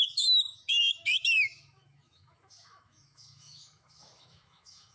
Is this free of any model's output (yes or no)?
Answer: no